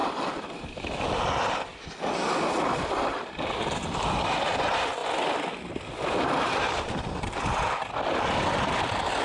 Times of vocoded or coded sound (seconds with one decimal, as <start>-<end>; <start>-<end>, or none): none